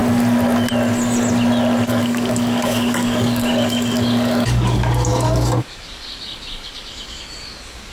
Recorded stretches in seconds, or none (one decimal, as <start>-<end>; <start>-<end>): 0.0-1.9